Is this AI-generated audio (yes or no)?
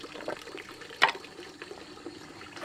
no